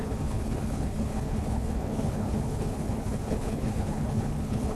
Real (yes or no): no